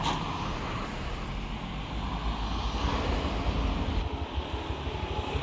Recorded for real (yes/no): yes